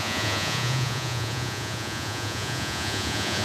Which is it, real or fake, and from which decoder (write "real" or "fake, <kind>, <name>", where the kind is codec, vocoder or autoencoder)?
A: fake, vocoder, Vocos